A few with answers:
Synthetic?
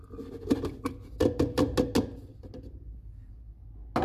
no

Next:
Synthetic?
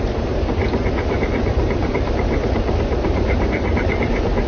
yes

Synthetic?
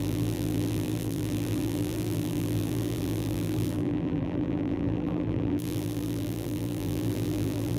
yes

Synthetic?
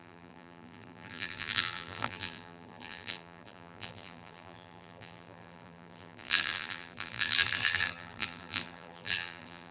yes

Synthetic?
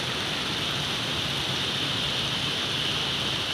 no